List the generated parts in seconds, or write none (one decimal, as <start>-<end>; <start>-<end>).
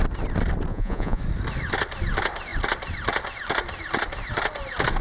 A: 0.7-1.2